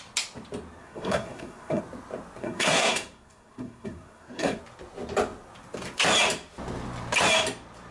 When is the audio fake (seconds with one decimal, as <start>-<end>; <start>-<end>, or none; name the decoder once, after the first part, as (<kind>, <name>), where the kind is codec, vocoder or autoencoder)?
0.8-1.8 (codec, SNAC); 2.4-4.6